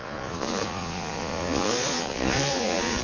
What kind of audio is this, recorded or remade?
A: remade